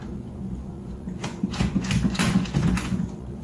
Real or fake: fake